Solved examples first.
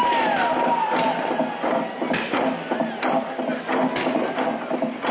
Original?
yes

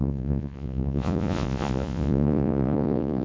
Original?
no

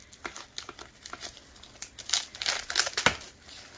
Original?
yes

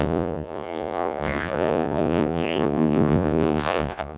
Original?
no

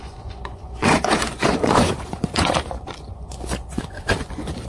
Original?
no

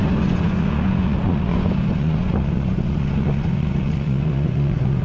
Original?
no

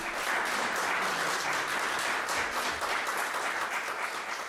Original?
yes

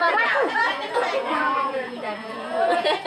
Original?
no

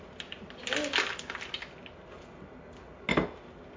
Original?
yes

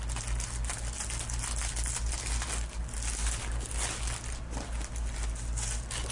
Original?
yes